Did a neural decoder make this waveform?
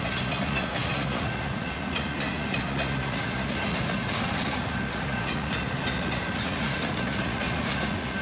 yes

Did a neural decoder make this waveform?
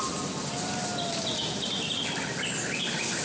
no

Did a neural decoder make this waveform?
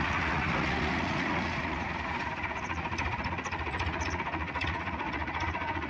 yes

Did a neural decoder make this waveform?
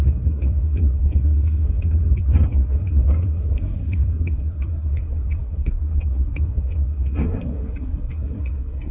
yes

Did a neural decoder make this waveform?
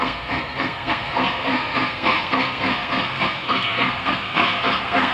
yes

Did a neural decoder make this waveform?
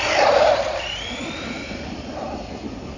yes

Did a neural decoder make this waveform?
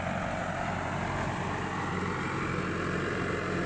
no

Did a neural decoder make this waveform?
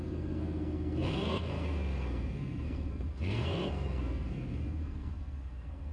yes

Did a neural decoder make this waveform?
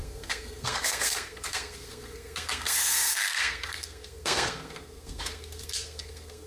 yes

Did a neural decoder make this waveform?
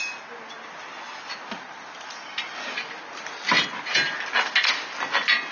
no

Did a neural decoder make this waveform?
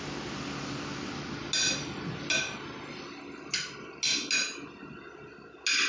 no